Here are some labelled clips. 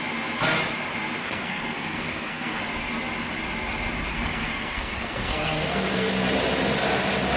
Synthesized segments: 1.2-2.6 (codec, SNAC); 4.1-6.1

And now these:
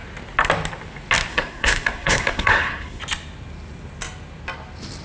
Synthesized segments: 1.3-3.0 (codec, SNAC)

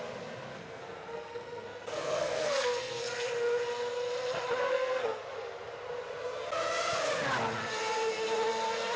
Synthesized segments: 0.5-3.0 (codec, SNAC); 4.7-5.2

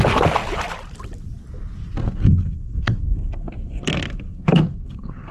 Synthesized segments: 2.0-5.3 (codec, SNAC)

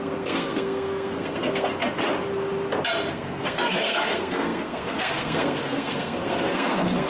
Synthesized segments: 0.0-1.7 (codec, SNAC); 3.1-7.1

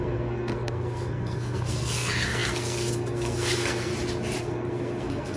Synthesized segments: 0.0-3.9 (codec, SNAC); 4.4-5.4